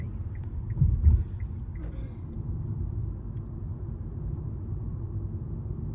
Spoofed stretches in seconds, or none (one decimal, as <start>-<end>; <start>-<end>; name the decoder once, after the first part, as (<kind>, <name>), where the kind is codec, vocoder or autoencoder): none